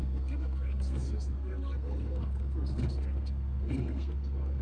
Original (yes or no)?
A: no